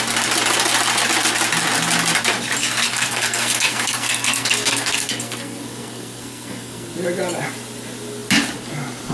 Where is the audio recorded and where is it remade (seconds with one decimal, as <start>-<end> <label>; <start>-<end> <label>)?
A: 0.0-2.6 recorded; 2.6-6.9 remade; 6.9-9.1 recorded